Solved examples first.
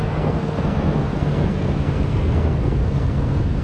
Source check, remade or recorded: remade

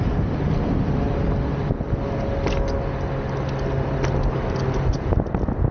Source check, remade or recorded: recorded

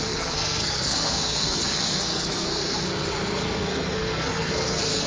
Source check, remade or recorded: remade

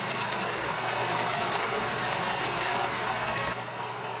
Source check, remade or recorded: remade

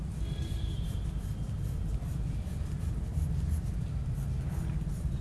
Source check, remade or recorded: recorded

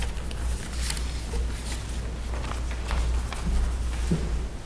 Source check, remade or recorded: recorded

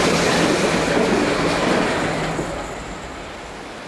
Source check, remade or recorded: recorded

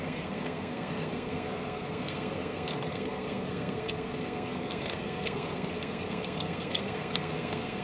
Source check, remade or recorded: remade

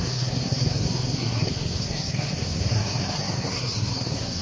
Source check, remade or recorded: remade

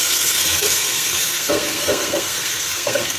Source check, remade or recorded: remade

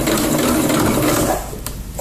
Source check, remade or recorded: recorded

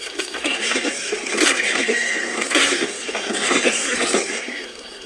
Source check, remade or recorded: remade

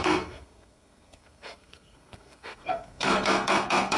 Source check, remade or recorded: remade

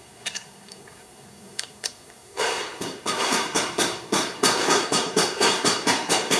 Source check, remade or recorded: remade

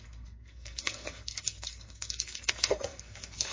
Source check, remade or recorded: remade